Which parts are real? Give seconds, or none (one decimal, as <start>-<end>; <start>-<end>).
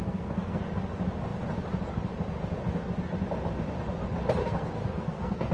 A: 0.6-4.4